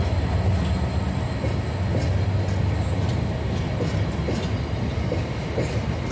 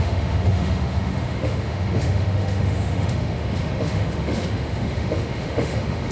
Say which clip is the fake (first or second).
second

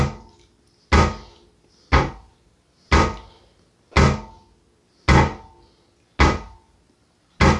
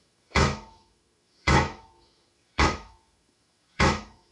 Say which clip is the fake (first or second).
second